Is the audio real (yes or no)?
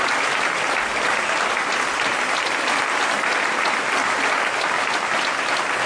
yes